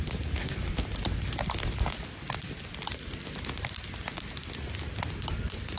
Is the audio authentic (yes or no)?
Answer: yes